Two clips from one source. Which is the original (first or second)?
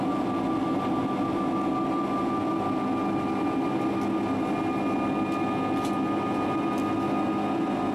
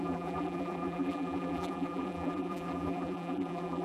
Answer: first